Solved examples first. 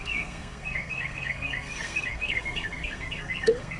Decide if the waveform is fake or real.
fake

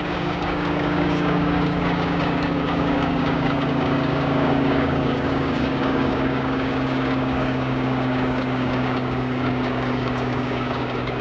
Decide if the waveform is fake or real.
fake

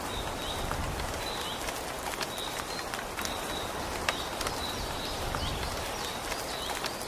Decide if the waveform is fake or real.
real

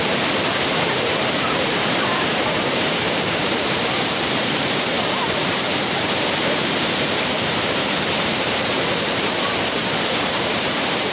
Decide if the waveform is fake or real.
fake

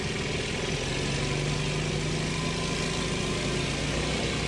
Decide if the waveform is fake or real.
real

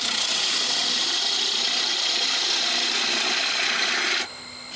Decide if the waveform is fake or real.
real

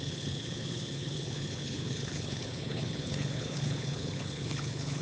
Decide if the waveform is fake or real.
fake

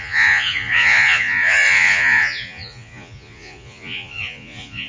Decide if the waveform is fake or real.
fake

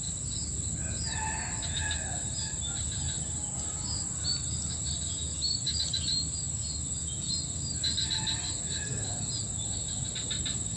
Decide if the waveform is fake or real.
real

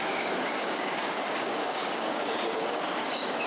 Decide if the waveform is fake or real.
fake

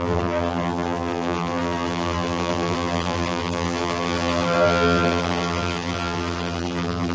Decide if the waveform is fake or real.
fake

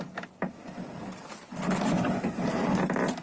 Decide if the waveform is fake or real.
real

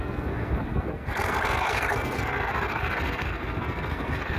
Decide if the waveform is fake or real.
fake